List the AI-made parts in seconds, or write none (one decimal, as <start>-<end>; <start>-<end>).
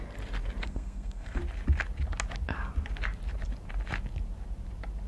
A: 0.6-1.4